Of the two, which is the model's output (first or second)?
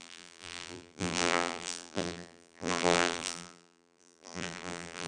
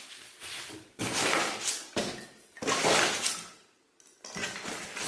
first